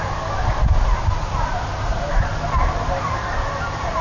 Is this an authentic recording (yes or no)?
yes